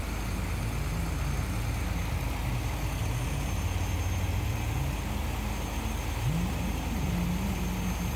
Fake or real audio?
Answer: real